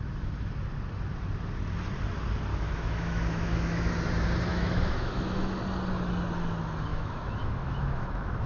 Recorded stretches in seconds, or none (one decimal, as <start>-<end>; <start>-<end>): 0.0-2.5; 3.9-4.5; 5.6-6.9